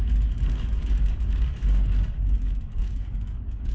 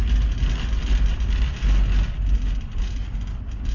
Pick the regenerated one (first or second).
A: first